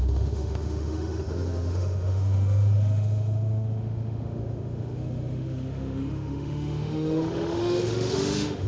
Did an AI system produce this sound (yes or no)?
yes